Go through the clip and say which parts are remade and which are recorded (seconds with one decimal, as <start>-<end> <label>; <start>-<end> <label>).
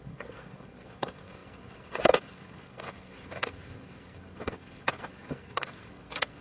0.0-6.4 remade